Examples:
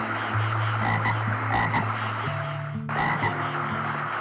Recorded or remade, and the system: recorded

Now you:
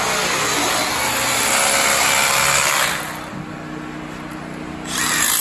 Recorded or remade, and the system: recorded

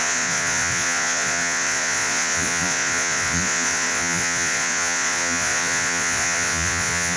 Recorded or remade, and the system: remade, vocoder, Vocos